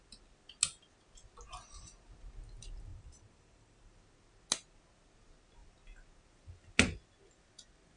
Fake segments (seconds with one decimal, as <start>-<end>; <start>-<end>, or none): 2.9-3.9